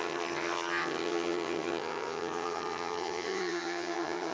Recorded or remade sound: remade